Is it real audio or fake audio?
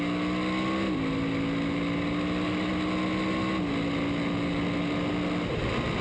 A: real